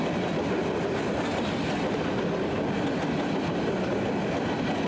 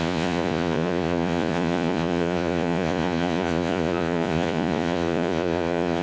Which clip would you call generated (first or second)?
second